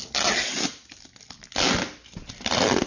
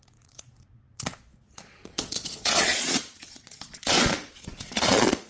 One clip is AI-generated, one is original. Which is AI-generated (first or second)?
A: second